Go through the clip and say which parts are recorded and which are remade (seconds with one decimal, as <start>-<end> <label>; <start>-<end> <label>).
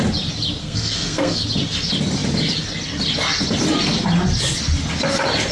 0.0-0.6 recorded; 0.6-1.4 remade; 1.4-5.5 recorded